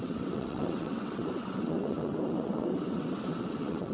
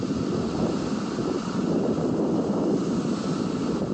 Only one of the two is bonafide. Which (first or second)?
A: second